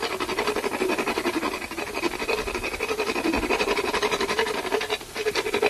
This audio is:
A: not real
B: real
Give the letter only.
B